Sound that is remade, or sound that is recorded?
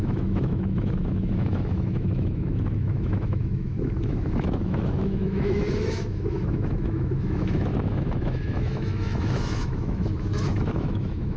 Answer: remade